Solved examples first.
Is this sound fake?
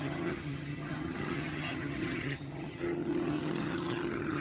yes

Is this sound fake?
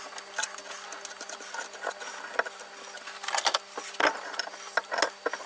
no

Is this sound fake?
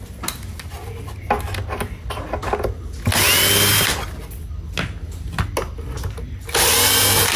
no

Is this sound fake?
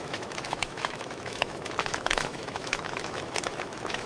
yes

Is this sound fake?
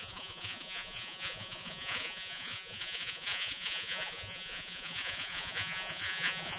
yes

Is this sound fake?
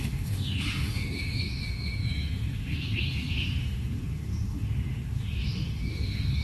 yes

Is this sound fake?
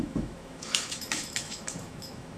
yes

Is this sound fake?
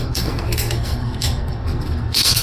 yes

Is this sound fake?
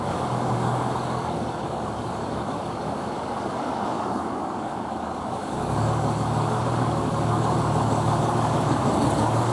yes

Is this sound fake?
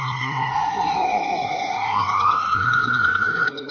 yes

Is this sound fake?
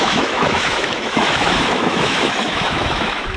yes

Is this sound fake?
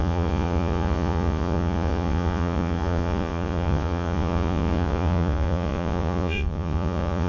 yes